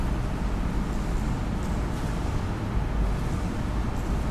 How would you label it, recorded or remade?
recorded